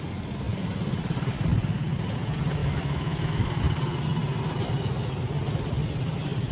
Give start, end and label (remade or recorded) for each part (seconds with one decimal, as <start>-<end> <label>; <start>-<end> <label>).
0.0-2.6 recorded; 2.6-3.6 remade; 3.6-6.5 recorded